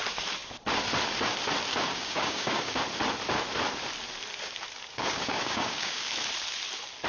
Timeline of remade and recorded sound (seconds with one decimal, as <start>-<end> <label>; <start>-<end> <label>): 0.0-1.9 recorded; 1.9-2.8 remade; 2.8-4.9 recorded; 4.9-6.1 remade; 6.1-7.1 recorded

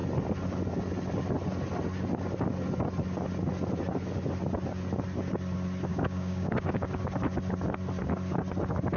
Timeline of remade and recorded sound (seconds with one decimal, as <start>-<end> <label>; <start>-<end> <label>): 0.0-5.9 recorded; 5.9-7.0 remade; 7.0-9.0 recorded

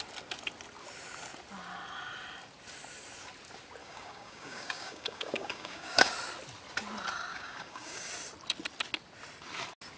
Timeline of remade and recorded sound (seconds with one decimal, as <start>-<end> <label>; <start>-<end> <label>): 0.0-3.8 recorded; 3.8-6.1 remade; 6.1-7.3 recorded; 7.3-8.1 remade; 8.1-10.0 recorded

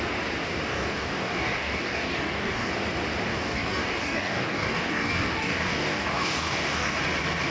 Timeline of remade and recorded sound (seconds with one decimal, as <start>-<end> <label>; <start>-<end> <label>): 0.0-0.7 recorded; 0.7-2.7 remade; 2.7-3.3 recorded; 3.3-7.0 remade; 7.0-7.5 recorded

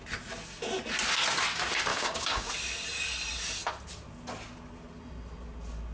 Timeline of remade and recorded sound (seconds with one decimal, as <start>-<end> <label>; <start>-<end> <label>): 0.0-1.9 recorded; 1.9-2.5 remade; 2.5-5.9 recorded

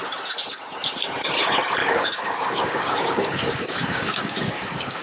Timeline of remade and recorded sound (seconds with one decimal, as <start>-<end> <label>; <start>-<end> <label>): 0.0-1.8 recorded; 1.8-5.0 remade

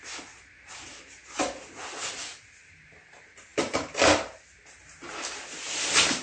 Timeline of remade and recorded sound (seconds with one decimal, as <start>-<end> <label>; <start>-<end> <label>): 0.0-6.2 recorded

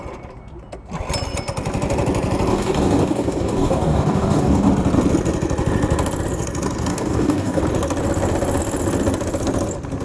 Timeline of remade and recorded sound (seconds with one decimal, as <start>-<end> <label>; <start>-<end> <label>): 0.0-2.5 recorded; 2.5-4.7 remade; 4.7-6.9 recorded; 6.9-7.6 remade; 7.6-10.0 recorded